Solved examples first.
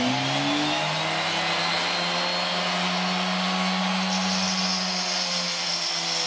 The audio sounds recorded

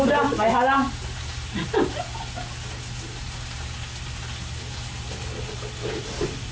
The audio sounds recorded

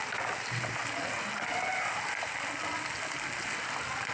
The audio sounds recorded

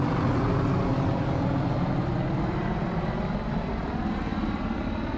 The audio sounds recorded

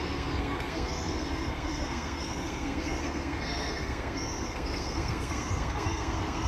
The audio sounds remade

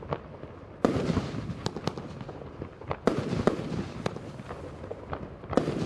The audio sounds recorded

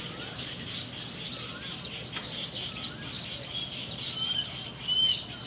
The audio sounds recorded